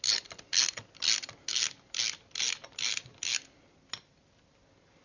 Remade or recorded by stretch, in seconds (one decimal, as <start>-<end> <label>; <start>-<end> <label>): 0.0-5.0 recorded